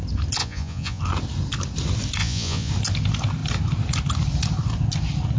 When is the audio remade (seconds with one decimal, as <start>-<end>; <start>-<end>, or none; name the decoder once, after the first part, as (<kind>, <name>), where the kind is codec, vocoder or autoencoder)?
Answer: 0.4-1.0 (vocoder, Vocos); 2.2-2.7